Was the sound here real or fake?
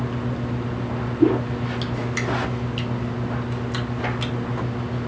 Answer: real